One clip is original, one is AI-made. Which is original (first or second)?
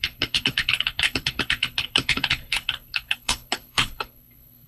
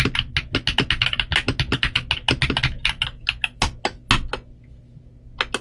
second